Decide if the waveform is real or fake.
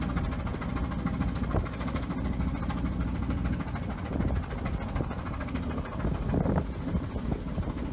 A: real